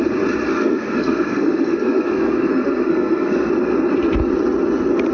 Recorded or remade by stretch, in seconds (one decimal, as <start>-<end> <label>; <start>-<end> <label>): 0.0-0.5 recorded; 0.5-3.5 remade; 3.5-5.1 recorded

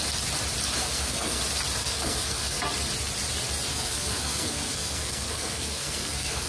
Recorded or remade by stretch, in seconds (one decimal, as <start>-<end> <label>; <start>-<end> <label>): 0.0-0.8 recorded; 0.8-1.4 remade; 1.4-1.8 recorded; 1.8-2.6 remade; 2.6-3.7 recorded; 3.7-6.5 remade

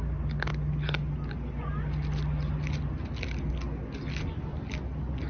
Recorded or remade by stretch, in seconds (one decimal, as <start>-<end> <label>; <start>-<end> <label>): 0.0-5.3 recorded

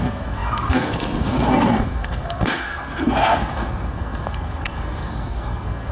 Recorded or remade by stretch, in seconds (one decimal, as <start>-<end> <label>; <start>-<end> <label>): 0.0-5.9 remade

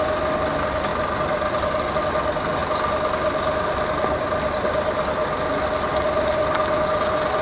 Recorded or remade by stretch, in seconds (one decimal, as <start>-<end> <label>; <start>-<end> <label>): 0.0-7.4 recorded